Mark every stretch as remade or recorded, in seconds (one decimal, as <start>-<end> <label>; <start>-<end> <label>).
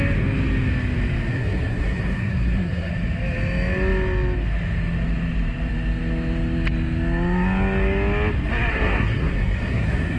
0.0-1.3 recorded; 1.3-2.9 remade; 2.9-8.7 recorded; 8.7-10.2 remade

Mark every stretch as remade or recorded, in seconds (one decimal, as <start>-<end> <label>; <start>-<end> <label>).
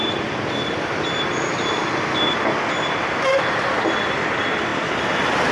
0.0-5.5 recorded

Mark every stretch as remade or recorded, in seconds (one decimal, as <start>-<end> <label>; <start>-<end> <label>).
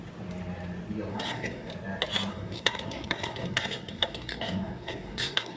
0.0-1.1 recorded; 1.1-1.7 remade; 1.7-2.3 recorded; 2.3-5.6 remade